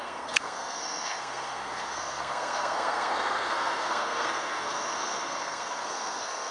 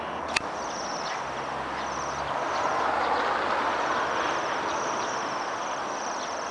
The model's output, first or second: first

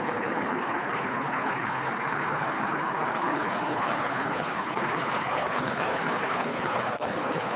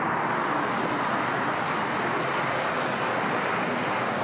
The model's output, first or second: first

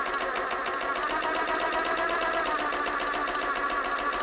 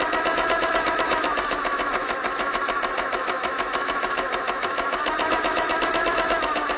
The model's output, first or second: second